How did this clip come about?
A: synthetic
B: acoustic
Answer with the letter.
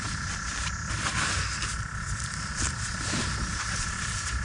B